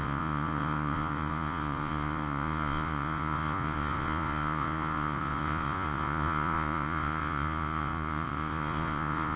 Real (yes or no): no